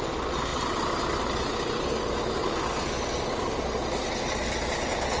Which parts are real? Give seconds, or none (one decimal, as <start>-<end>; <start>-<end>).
0.0-5.2